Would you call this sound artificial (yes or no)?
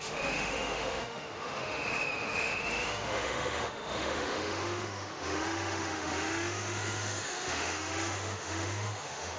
yes